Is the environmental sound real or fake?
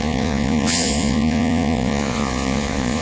fake